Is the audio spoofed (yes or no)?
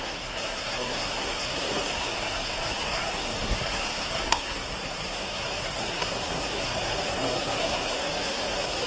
yes